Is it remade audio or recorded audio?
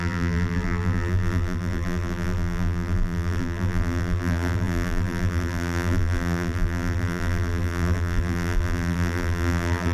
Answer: remade